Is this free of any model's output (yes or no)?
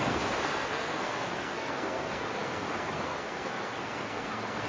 no